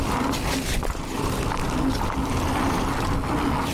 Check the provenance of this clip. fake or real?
real